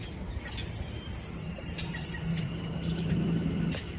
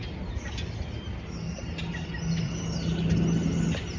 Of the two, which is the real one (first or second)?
second